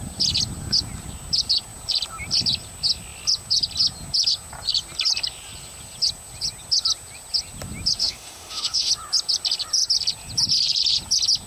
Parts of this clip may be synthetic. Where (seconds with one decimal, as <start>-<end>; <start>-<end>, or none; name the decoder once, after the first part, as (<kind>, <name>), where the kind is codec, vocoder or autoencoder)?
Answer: 8.0-8.9 (autoencoder, DAC-VAE)